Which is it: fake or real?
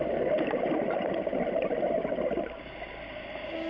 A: real